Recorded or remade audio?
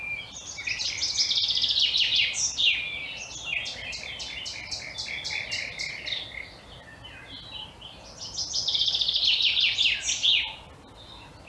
recorded